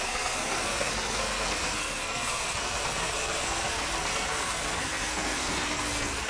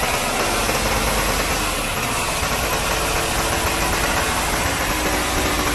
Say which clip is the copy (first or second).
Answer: first